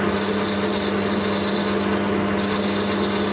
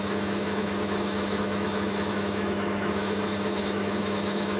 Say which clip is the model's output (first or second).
second